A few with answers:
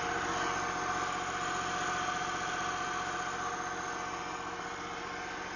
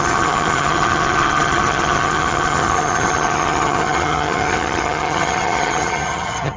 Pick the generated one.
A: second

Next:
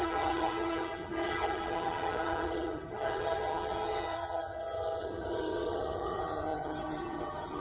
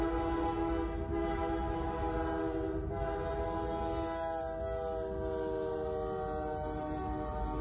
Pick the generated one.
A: first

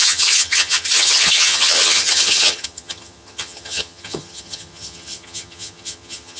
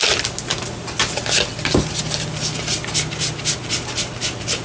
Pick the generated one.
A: first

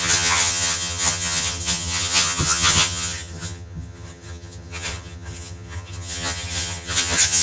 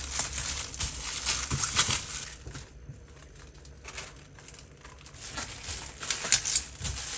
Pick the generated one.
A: first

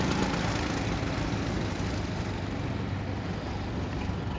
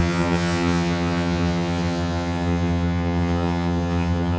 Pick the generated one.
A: second